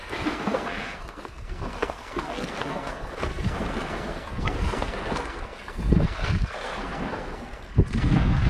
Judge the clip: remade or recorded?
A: remade